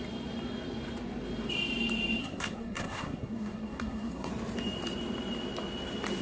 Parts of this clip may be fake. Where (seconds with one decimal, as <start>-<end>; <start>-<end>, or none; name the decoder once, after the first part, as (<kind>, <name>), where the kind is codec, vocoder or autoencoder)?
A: 2.2-4.3 (codec, SNAC)